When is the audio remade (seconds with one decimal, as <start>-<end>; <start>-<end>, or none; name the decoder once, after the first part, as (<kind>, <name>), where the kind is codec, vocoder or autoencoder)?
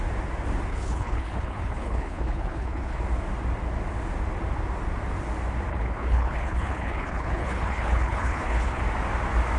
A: 0.7-3.0 (codec, HILCodec); 5.7-8.8